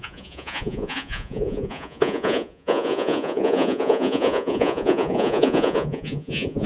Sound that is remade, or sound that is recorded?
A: remade